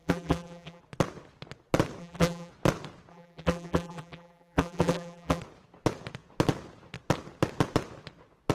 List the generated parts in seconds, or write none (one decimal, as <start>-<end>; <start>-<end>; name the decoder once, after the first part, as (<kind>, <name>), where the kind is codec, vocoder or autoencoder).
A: 0.0-0.8 (vocoder, BigVGAN v2); 2.0-2.5; 3.1-5.4